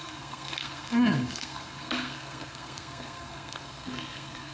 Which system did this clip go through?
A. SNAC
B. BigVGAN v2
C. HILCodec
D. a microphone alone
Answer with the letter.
A